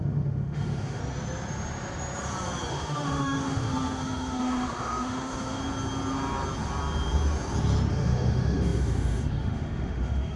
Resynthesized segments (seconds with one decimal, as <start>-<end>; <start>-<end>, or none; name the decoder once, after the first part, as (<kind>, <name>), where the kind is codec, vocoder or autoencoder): 0.0-1.0 (autoencoder, DAC-VAE); 2.7-5.6; 7.9-10.4